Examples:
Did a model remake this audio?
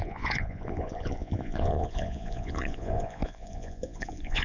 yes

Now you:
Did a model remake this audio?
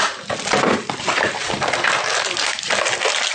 no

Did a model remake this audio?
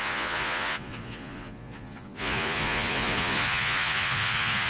yes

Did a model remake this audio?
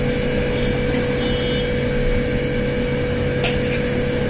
no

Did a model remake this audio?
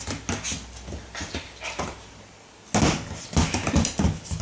no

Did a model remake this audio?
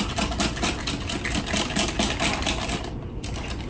no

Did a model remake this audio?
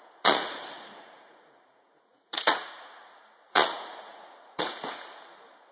yes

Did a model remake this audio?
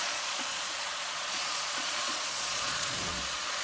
yes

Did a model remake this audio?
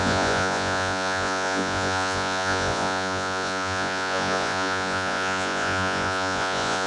yes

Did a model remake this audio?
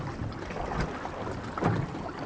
no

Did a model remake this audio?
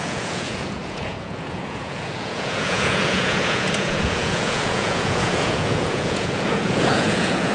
yes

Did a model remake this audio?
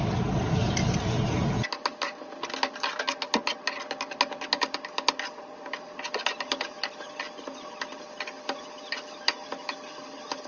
no